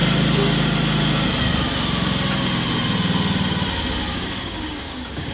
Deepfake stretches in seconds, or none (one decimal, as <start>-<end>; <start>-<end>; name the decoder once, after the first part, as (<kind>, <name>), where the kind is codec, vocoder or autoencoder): 4.1-5.3 (codec, DAC)